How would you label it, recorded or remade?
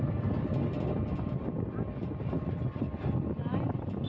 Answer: recorded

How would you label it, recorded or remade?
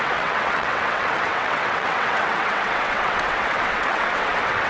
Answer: remade